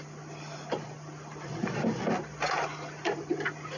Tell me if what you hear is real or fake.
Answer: real